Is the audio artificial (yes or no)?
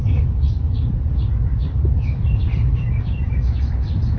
no